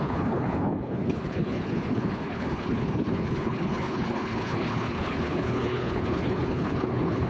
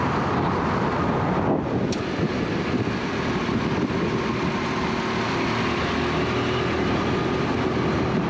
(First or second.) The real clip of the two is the second